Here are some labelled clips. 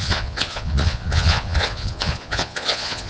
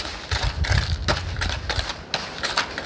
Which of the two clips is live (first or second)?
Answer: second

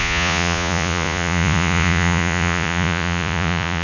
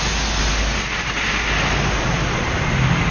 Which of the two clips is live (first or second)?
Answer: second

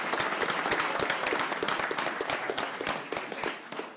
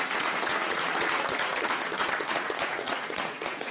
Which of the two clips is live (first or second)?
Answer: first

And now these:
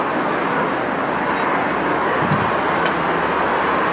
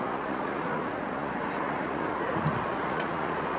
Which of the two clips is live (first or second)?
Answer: first